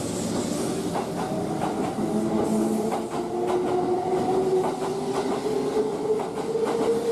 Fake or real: real